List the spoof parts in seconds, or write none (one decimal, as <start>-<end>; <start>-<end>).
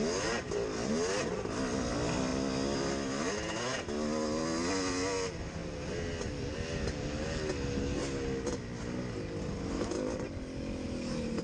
none